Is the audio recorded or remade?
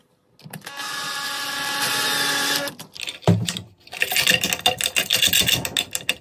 recorded